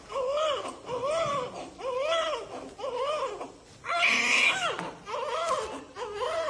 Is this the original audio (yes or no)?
yes